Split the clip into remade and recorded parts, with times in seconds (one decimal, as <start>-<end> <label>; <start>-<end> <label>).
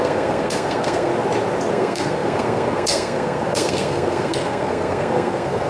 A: 0.0-1.1 remade; 1.1-1.7 recorded; 1.7-5.7 remade